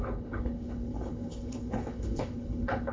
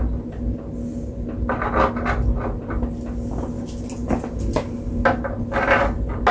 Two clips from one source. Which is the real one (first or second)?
second